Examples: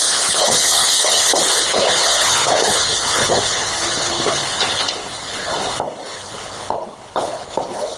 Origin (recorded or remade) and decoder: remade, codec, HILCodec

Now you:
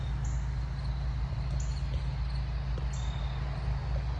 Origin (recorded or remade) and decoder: recorded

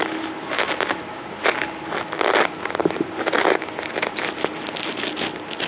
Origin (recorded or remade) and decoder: recorded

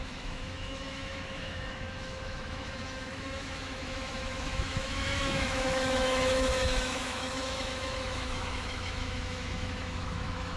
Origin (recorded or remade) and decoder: remade, autoencoder, DAC-VAE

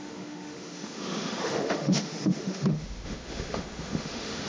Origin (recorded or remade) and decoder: remade, autoencoder, DAC-VAE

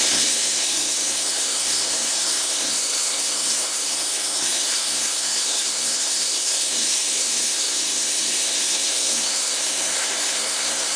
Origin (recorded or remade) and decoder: remade, codec, SNAC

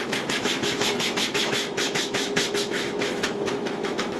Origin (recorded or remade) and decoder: remade, autoencoder, DAC-VAE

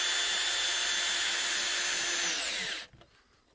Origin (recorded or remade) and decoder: recorded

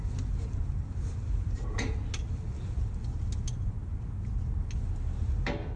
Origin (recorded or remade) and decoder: recorded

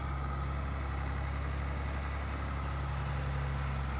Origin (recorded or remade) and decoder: recorded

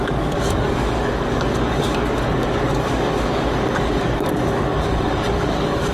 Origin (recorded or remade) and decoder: remade, codec, DAC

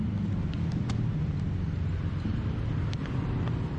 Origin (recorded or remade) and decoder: recorded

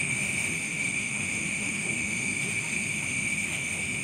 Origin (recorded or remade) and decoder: remade, autoencoder, DAC-VAE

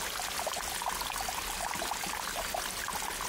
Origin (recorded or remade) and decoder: recorded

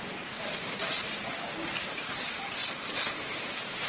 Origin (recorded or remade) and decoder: remade, vocoder, BigVGAN v2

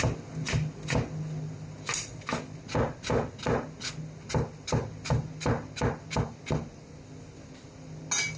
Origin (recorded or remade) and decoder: recorded